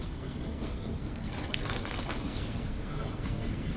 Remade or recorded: remade